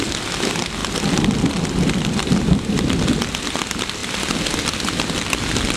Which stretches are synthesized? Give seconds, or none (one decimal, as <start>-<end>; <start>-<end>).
none